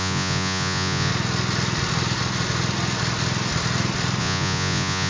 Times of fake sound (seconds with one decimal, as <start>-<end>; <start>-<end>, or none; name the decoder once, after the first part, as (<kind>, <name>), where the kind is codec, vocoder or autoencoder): 0.0-1.1 (vocoder, Vocos); 4.2-5.1